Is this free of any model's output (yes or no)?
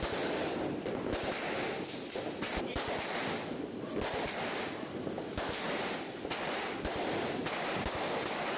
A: yes